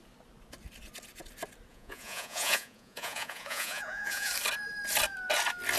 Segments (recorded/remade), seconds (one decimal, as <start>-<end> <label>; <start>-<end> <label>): 0.0-1.7 recorded; 1.7-4.3 remade; 4.3-5.8 recorded